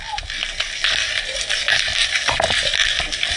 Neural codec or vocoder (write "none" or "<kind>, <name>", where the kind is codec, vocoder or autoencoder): none